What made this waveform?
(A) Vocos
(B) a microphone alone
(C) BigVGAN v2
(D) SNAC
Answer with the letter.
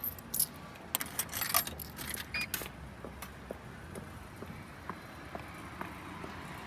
B